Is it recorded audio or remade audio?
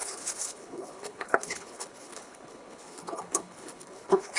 remade